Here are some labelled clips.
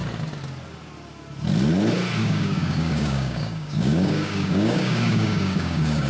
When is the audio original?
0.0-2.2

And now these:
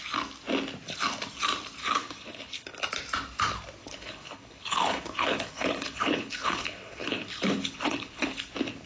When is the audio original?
0.0-1.8; 2.8-3.8; 8.3-8.9

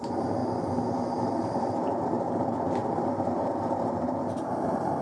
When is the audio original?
0.4-1.6

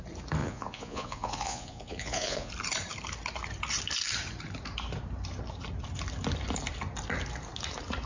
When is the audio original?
0.0-0.4; 2.5-8.1

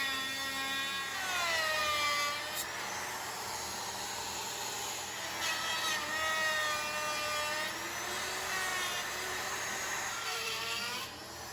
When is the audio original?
0.0-8.7; 10.6-11.5

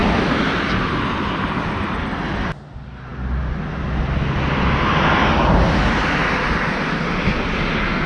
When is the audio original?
0.0-8.1

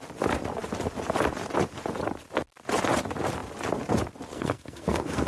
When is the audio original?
0.0-4.3

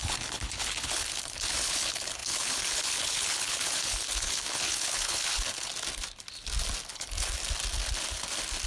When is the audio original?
5.7-6.9; 7.4-8.7